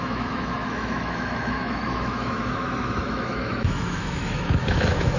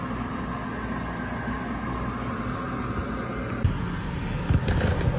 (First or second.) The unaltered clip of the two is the second